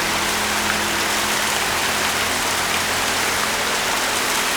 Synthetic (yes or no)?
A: no